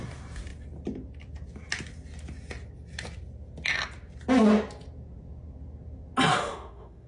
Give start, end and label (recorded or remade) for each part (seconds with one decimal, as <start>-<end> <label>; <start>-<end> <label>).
0.0-6.3 recorded; 6.3-7.1 remade